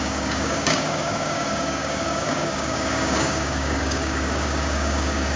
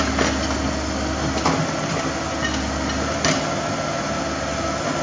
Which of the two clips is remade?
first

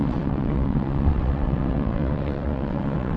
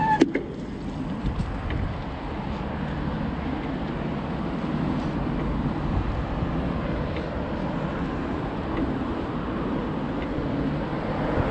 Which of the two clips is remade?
first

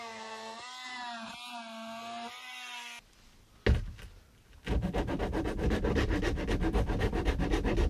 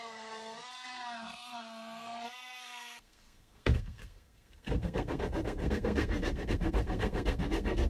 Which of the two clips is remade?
second